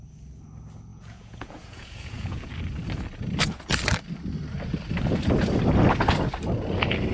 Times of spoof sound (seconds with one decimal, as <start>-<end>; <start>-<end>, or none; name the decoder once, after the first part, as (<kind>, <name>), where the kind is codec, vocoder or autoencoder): 0.9-2.5 (vocoder, Vocos)